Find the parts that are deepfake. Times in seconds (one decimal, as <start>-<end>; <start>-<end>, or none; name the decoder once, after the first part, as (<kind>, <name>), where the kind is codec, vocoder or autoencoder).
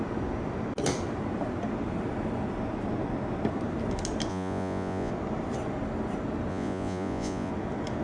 4.3-5.1 (vocoder, Vocos); 6.5-7.5